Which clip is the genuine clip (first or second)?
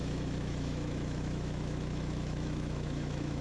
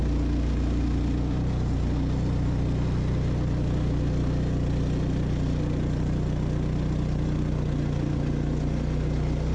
second